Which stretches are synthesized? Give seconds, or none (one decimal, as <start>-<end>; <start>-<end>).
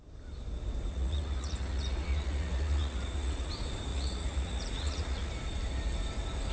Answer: 0.9-3.5; 3.9-5.3